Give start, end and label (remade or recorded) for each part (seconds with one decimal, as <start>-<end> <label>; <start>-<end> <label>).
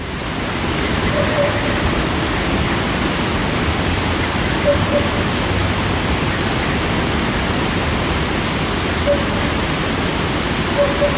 0.0-3.4 recorded; 3.4-5.0 remade; 5.0-5.6 recorded; 5.6-6.6 remade; 6.6-11.2 recorded